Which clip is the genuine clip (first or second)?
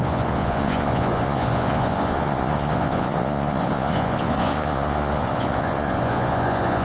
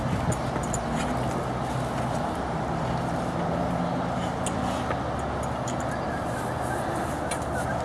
second